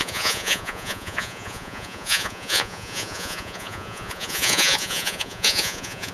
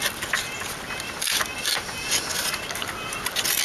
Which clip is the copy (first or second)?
first